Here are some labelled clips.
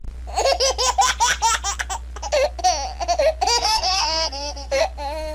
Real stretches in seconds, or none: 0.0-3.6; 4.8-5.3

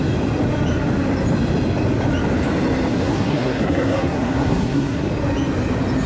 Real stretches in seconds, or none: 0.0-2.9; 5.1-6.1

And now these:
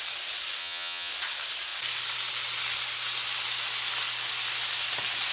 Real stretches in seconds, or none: 0.0-0.6; 1.1-5.3